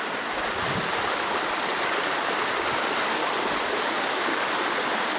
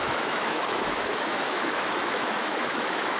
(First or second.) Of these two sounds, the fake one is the second